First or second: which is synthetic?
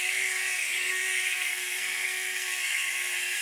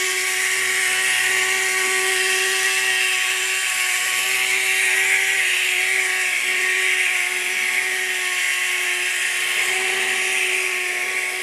first